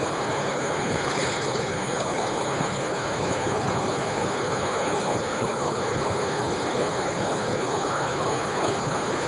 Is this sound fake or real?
fake